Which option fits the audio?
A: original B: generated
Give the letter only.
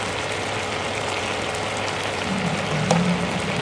A